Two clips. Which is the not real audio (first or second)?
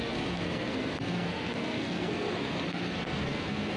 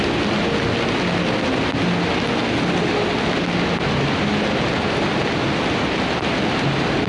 first